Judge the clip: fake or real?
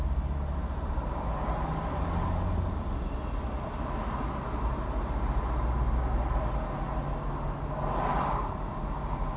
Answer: real